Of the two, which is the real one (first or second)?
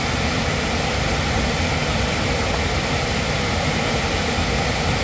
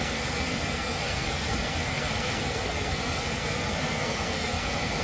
first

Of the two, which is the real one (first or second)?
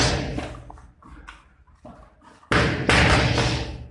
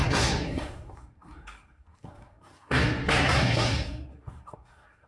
first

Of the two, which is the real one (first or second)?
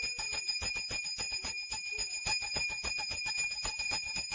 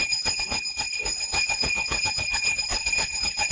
first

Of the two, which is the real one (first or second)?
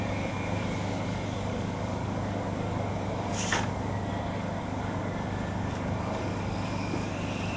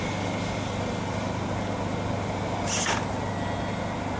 second